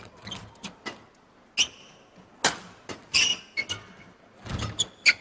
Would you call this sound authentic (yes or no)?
yes